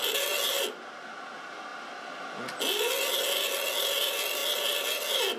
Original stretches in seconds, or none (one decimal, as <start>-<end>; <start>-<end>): 0.0-5.4